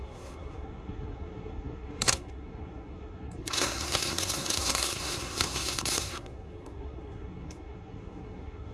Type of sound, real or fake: fake